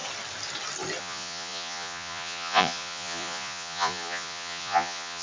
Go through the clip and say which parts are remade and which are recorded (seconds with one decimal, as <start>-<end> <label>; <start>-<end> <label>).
0.0-1.0 recorded; 1.0-5.2 remade

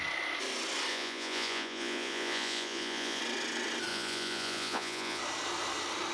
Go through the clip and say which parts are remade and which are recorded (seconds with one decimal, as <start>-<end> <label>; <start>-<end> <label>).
0.0-0.9 recorded; 0.9-3.2 remade; 3.2-3.9 recorded; 3.9-5.2 remade; 5.2-6.1 recorded

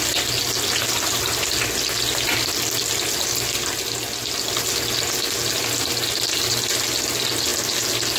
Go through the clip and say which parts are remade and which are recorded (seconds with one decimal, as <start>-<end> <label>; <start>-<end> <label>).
0.0-8.2 recorded

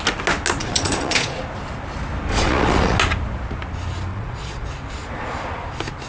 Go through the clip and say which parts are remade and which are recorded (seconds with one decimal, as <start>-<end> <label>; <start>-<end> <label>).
0.0-0.6 recorded; 0.6-1.4 remade; 1.4-2.3 recorded; 2.3-3.0 remade; 3.0-4.1 recorded; 4.1-4.7 remade; 4.7-6.1 recorded